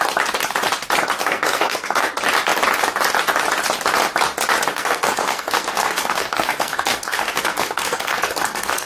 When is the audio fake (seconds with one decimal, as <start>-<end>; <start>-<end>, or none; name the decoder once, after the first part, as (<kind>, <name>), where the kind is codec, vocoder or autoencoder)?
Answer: 1.2-2.1 (codec, SNAC); 4.7-8.9